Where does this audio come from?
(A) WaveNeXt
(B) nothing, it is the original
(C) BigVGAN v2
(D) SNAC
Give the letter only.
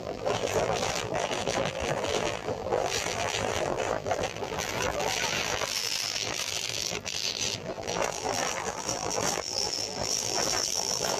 C